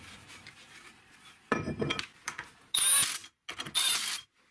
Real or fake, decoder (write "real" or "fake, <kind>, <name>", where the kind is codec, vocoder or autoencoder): real